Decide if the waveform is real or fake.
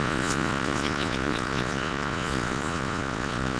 fake